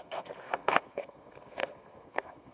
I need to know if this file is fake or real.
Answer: fake